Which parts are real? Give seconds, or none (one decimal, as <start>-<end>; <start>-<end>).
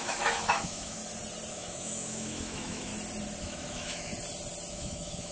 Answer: 1.0-1.5; 2.9-3.4; 4.1-4.7